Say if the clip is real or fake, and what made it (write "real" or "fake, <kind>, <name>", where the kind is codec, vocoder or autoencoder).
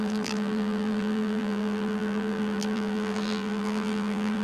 fake, vocoder, BigVGAN v2